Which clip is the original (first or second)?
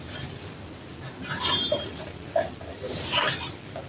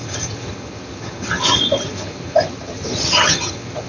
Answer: first